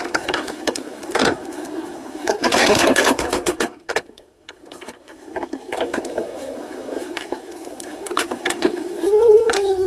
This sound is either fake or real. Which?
fake